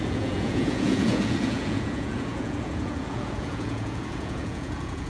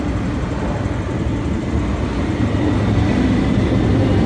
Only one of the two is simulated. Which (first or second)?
first